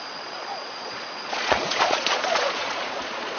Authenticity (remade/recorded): remade